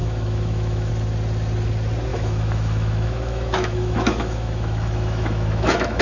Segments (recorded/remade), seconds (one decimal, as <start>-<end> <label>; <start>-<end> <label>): 0.0-0.9 remade; 0.9-2.1 recorded; 2.1-6.0 remade